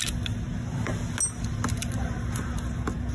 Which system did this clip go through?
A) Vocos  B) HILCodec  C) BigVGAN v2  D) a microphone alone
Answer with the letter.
D